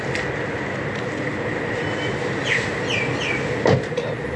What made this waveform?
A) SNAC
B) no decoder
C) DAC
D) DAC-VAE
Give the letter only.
B